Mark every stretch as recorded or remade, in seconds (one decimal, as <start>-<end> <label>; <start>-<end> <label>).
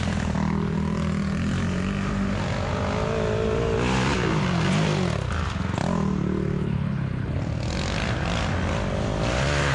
0.0-6.6 recorded; 6.6-7.4 remade; 7.4-9.7 recorded